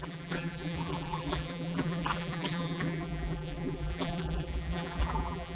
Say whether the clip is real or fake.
fake